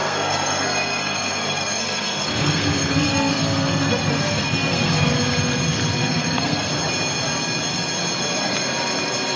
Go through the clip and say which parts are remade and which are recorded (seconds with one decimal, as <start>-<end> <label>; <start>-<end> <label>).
0.0-5.1 remade; 5.1-6.0 recorded; 6.0-6.7 remade; 6.7-9.4 recorded